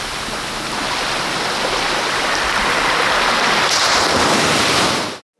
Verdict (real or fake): real